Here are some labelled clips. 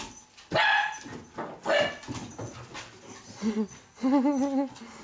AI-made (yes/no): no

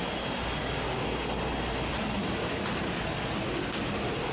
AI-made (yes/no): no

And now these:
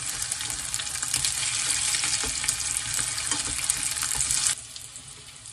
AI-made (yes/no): no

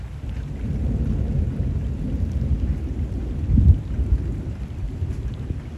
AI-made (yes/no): no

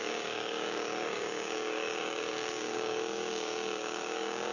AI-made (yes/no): yes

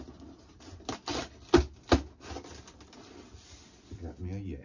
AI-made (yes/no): no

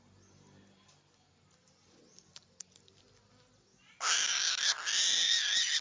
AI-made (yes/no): no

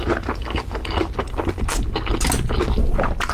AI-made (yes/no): no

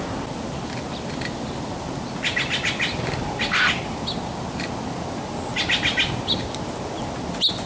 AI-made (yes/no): no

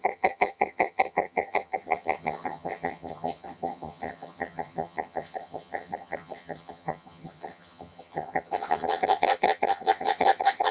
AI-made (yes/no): yes